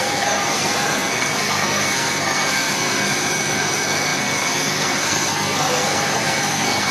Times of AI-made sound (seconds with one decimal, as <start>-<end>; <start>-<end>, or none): 0.0-6.9